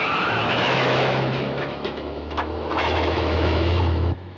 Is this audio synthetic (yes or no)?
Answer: yes